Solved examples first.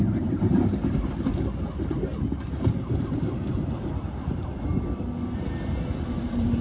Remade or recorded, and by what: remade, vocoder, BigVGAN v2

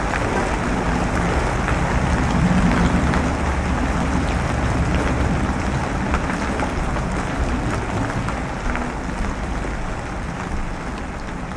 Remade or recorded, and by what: recorded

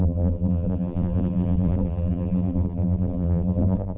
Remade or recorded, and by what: remade, vocoder, BigVGAN v2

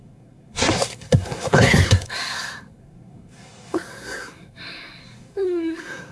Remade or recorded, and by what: remade, codec, SNAC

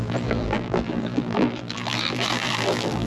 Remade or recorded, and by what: remade, vocoder, BigVGAN v2